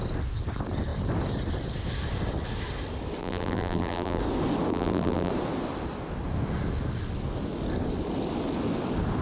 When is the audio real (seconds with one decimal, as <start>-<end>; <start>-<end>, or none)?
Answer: 0.0-3.2; 4.2-4.7; 5.3-9.2